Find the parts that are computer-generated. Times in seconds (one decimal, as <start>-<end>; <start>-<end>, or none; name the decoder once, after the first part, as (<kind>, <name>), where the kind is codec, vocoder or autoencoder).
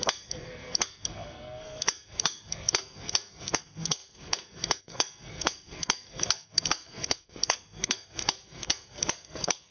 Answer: 0.0-9.7 (codec, SNAC)